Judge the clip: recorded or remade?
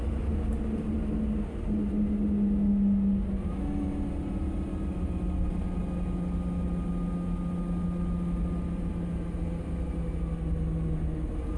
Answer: recorded